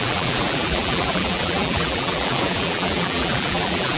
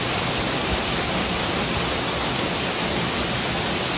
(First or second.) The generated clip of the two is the first